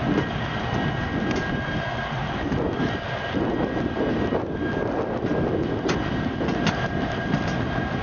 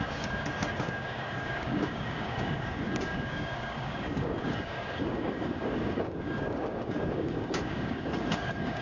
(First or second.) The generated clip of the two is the second